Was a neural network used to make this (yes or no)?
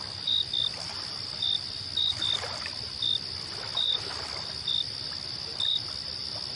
no